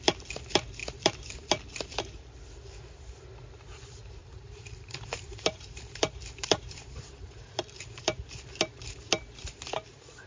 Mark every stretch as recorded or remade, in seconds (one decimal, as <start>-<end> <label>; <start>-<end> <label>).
0.0-0.8 recorded; 0.8-1.5 remade; 1.5-4.2 recorded; 4.2-7.3 remade; 7.3-10.3 recorded